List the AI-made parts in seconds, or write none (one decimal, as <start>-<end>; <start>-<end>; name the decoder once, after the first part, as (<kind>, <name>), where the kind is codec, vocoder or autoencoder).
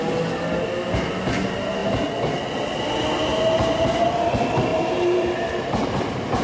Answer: 4.7-6.0 (vocoder, BigVGAN v2)